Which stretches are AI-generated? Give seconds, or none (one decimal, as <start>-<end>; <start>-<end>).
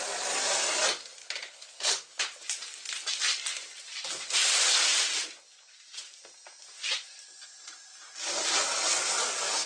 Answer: 1.2-2.4